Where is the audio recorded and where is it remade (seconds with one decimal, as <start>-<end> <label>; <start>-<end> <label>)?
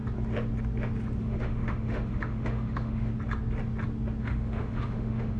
0.0-1.2 recorded; 1.2-3.1 remade; 3.1-4.2 recorded; 4.2-5.4 remade